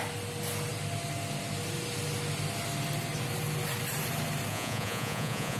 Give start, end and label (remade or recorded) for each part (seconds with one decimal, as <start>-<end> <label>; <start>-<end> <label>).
0.0-4.5 recorded; 4.5-5.6 remade